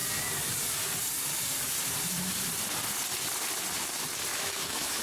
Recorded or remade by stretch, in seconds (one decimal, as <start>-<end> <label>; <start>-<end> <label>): 0.0-4.3 recorded; 4.3-5.0 remade